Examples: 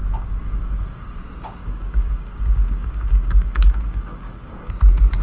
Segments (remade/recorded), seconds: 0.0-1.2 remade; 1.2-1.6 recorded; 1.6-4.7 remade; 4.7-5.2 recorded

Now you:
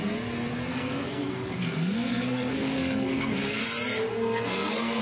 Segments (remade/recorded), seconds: 0.0-0.7 recorded; 0.7-3.6 remade; 3.6-4.1 recorded; 4.1-5.0 remade

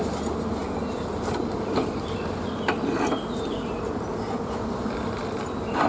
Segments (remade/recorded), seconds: 0.0-5.9 recorded

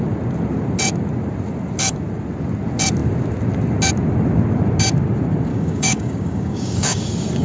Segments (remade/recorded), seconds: 0.0-5.5 recorded; 5.5-7.0 remade; 7.0-7.4 recorded

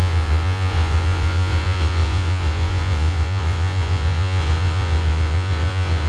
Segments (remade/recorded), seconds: 0.0-6.1 remade

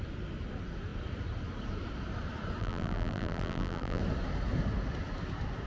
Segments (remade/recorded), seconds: 0.0-2.6 recorded; 2.6-4.0 remade; 4.0-5.7 recorded

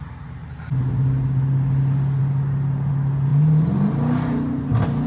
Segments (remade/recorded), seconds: 0.0-5.1 recorded